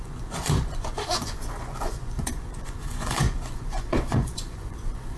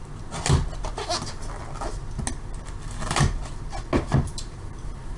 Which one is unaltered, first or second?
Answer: second